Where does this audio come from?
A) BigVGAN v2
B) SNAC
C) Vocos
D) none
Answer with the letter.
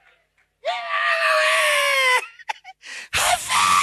D